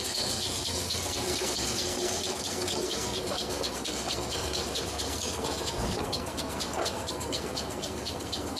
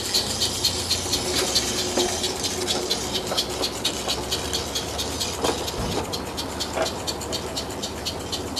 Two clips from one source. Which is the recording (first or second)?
second